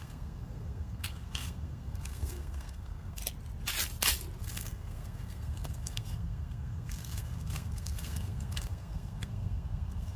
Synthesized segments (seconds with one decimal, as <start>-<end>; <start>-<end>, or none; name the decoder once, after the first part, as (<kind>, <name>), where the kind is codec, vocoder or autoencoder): 0.0-3.2 (codec, SNAC); 4.4-10.2